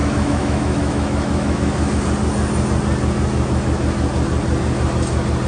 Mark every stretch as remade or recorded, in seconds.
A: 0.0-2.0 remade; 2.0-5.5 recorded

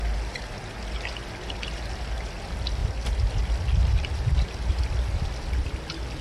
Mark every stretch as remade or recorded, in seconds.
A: 0.0-6.2 recorded

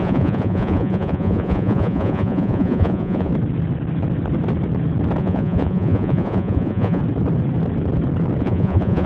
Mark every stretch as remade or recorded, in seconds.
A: 0.0-3.3 remade; 3.3-5.2 recorded; 5.2-7.0 remade; 7.0-8.4 recorded; 8.4-9.1 remade

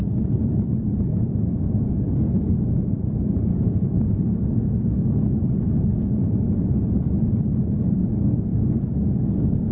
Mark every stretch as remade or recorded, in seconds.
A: 0.0-1.1 recorded; 1.1-2.8 remade; 2.8-3.5 recorded; 3.5-6.6 remade; 6.6-8.5 recorded; 8.5-9.7 remade